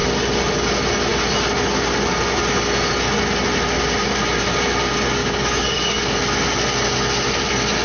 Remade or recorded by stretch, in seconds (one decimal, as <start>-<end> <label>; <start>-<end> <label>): 0.0-5.2 recorded; 5.2-6.2 remade; 6.2-7.8 recorded